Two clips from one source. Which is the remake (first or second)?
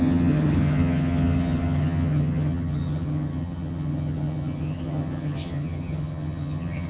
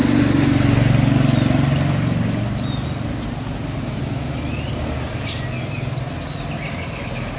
first